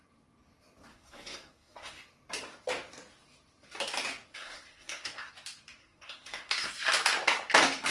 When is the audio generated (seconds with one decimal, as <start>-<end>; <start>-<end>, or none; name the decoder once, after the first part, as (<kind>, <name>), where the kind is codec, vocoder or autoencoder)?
0.9-2.0 (codec, SNAC); 4.3-5.3; 5.8-6.7